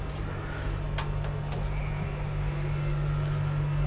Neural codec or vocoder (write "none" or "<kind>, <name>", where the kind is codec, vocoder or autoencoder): none